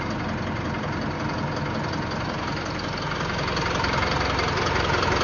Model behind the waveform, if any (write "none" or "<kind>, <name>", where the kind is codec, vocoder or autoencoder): none